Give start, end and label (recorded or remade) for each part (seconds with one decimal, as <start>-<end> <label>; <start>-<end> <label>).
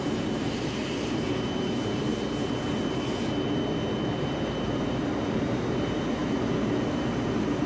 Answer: 0.0-2.1 remade; 2.1-4.1 recorded; 4.1-7.7 remade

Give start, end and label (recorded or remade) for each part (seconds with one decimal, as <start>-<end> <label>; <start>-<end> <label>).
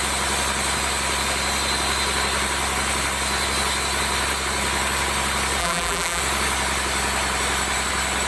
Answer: 0.0-5.6 recorded; 5.6-6.2 remade; 6.2-8.3 recorded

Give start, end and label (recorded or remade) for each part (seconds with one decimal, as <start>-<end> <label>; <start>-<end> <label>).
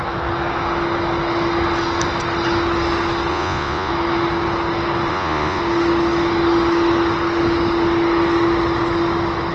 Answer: 0.0-3.3 recorded; 3.3-3.9 remade; 3.9-5.1 recorded; 5.1-5.6 remade; 5.6-9.5 recorded